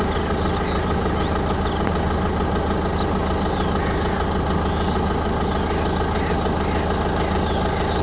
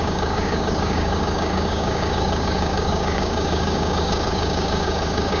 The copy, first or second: second